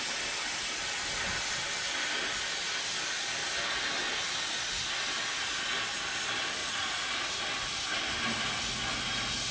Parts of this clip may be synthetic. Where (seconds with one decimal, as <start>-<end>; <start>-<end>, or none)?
6.6-7.4